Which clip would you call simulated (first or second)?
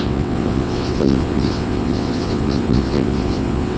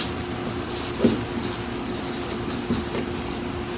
first